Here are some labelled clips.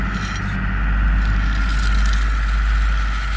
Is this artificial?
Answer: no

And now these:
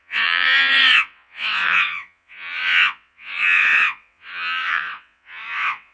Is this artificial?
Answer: yes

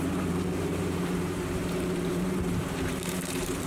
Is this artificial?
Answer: yes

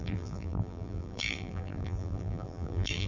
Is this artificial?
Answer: yes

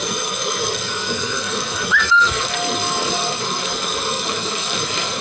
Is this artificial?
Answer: yes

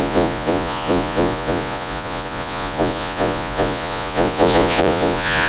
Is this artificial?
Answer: yes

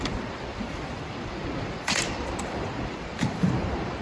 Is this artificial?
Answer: yes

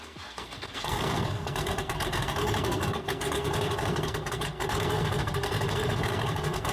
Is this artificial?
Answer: yes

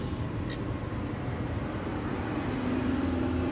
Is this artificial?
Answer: no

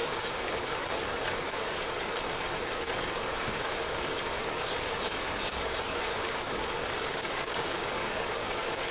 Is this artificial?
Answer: yes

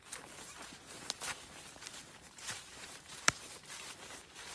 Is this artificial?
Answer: yes